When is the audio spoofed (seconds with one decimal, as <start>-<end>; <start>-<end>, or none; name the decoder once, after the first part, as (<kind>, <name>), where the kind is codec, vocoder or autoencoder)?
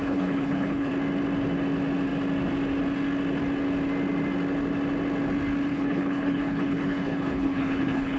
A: 0.0-0.9 (codec, HILCodec); 5.7-8.2